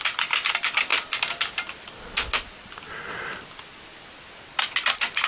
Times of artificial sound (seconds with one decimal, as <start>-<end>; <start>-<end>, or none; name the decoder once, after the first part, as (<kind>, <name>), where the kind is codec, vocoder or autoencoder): none